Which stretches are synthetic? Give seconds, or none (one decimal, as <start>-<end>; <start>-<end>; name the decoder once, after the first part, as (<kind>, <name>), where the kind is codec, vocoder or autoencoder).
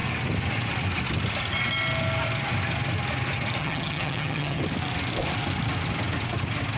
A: 3.6-4.6 (vocoder, HiFi-GAN)